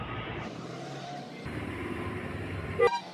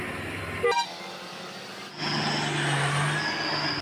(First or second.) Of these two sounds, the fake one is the first